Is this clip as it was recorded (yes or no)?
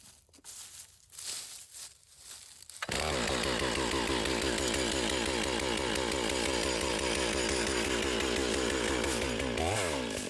yes